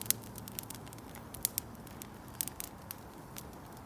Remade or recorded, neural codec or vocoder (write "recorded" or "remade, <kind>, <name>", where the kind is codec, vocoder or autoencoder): recorded